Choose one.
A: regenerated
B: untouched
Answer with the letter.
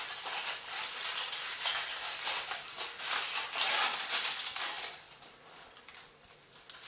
B